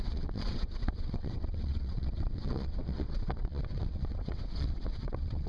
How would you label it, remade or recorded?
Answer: remade